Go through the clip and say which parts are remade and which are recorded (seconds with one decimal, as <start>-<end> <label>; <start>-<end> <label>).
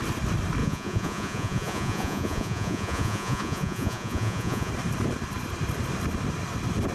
0.0-0.6 recorded; 0.6-4.7 remade; 4.7-6.9 recorded